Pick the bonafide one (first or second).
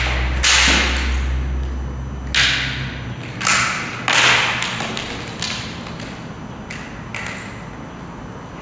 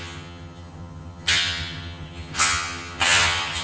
first